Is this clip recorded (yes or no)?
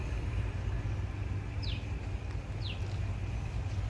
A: yes